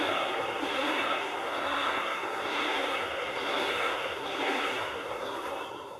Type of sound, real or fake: fake